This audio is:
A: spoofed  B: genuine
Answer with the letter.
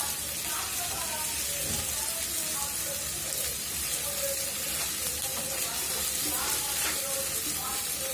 B